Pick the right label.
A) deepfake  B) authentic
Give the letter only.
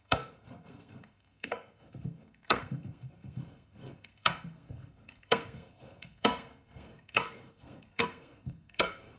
A